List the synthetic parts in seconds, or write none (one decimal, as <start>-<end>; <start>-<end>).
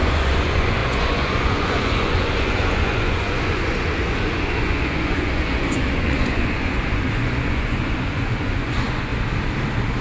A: 0.0-9.1